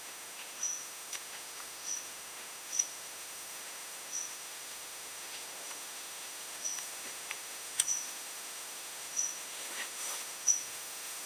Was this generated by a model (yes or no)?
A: yes